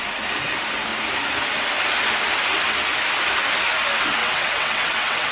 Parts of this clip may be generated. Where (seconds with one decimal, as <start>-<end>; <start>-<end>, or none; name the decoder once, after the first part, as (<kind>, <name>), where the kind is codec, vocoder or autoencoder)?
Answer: 4.2-5.3 (vocoder, WaveNeXt)

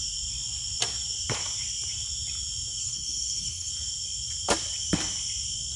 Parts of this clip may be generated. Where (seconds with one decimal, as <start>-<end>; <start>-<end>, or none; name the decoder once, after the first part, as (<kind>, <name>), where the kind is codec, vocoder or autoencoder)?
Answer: 2.8-3.7 (codec, SNAC)

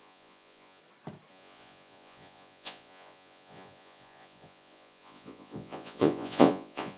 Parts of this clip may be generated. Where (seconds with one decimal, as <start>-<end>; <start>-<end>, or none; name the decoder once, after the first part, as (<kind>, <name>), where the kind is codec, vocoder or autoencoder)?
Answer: 0.0-0.8 (vocoder, Vocos); 1.3-7.0

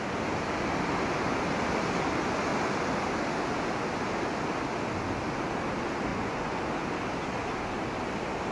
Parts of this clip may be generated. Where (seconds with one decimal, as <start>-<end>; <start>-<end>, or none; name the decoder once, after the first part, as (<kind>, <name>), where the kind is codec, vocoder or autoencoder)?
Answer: 6.1-6.6 (vocoder, Vocos)

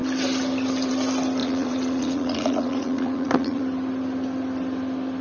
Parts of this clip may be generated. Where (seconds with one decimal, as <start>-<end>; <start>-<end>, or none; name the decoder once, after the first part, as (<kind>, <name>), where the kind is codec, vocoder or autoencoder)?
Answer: 1.4-3.6 (vocoder, Vocos)

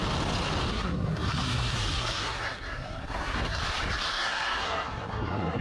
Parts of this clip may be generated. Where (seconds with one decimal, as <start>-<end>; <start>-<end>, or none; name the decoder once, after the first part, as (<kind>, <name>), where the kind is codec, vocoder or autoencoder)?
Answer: 0.7-3.6 (codec, SNAC); 4.1-5.6

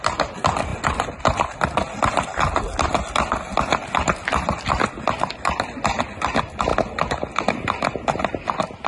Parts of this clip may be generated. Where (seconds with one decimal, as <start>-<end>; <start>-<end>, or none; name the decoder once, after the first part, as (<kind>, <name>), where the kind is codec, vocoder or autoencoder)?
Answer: none

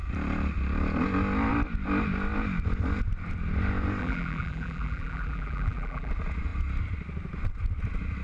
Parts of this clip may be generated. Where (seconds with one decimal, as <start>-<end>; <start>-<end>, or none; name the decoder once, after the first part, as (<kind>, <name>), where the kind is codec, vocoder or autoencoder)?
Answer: 4.0-6.1 (vocoder, BigVGAN v2)